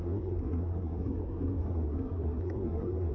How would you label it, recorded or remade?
remade